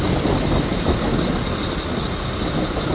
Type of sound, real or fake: real